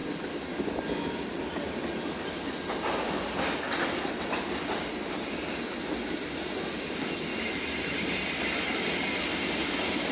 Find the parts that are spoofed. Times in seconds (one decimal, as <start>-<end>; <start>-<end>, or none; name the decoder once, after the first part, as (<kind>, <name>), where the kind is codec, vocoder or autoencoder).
7.3-8.7 (vocoder, BigVGAN v2)